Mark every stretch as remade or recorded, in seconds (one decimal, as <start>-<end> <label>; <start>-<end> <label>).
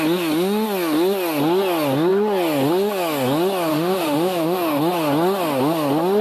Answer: 0.0-3.7 recorded; 3.7-4.8 remade; 4.8-6.2 recorded